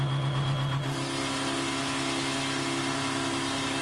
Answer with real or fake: real